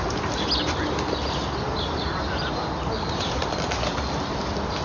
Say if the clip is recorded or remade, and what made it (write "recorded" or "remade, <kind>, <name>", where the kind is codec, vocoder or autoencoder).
recorded